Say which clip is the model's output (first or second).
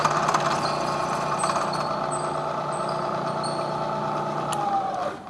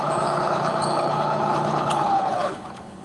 second